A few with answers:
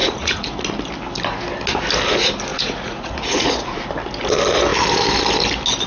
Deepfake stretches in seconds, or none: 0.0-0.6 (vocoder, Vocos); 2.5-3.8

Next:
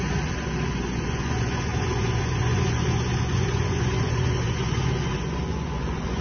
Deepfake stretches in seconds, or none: 0.0-6.2 (vocoder, Vocos)

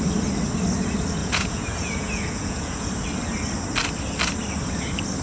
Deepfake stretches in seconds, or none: 1.2-2.9 (vocoder, Vocos)

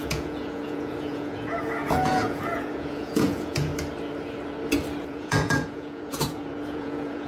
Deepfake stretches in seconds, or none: 0.0-3.7 (vocoder, Vocos); 5.1-7.3